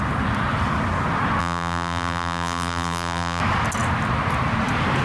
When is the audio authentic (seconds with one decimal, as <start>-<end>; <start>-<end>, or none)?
0.0-1.4; 3.4-5.0